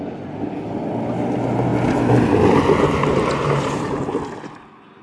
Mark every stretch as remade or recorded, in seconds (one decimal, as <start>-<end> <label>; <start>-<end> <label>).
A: 0.0-3.1 recorded; 3.1-4.1 remade; 4.1-5.0 recorded

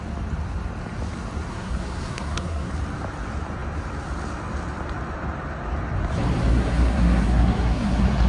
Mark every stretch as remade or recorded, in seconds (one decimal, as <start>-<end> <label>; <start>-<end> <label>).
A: 0.0-1.5 recorded; 1.5-2.7 remade; 2.7-6.5 recorded; 6.5-8.3 remade

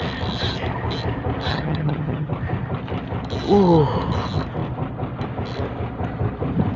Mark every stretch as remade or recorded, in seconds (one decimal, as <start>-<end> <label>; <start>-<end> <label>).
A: 0.0-1.5 recorded; 1.5-2.3 remade; 2.3-6.8 recorded

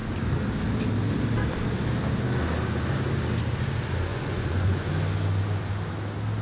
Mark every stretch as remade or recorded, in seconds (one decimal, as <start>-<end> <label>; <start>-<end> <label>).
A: 0.0-4.1 recorded; 4.1-4.9 remade; 4.9-6.4 recorded

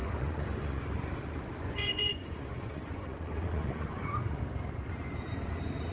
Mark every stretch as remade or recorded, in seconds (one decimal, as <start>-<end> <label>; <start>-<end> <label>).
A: 0.0-0.8 remade; 0.8-1.5 recorded; 1.5-4.4 remade; 4.4-5.9 recorded

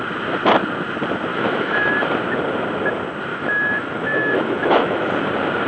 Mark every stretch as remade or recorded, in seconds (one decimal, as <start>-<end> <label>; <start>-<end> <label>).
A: 0.0-1.3 recorded; 1.3-1.9 remade; 1.9-3.3 recorded; 3.3-5.1 remade; 5.1-5.7 recorded

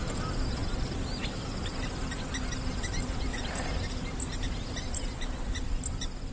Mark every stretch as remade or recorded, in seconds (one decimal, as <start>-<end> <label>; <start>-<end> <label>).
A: 0.0-6.3 recorded